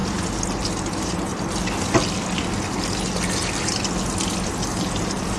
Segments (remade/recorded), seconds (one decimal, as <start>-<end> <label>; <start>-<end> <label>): 0.0-0.8 recorded; 0.8-1.3 remade; 1.3-4.5 recorded; 4.5-5.4 remade